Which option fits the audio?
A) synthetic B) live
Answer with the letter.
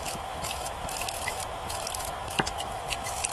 A